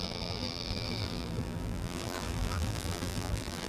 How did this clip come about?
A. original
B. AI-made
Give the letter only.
B